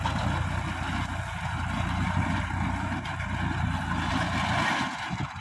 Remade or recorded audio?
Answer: recorded